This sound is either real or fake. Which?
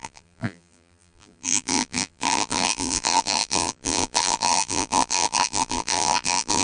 fake